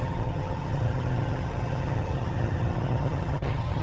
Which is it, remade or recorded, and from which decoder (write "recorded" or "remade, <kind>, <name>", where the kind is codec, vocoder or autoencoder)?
remade, vocoder, HiFi-GAN